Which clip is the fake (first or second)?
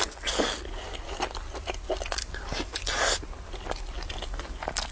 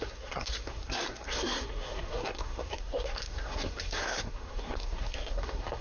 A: second